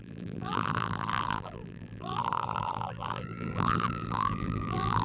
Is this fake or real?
fake